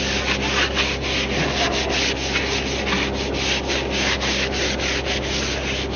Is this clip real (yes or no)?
yes